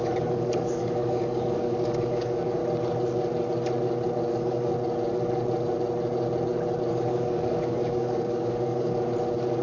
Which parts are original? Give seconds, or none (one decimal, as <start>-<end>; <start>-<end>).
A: 2.6-4.3; 4.7-6.9; 9.1-9.6

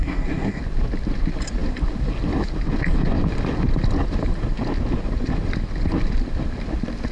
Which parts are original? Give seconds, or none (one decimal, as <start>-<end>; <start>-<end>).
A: 0.6-7.1